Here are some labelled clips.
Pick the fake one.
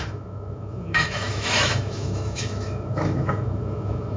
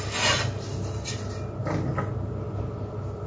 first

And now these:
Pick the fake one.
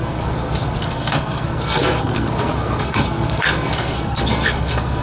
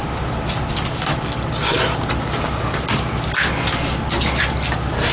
first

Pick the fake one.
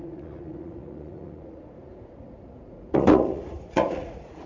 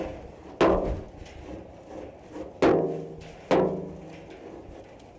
first